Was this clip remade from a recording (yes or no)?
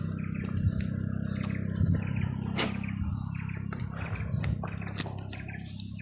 no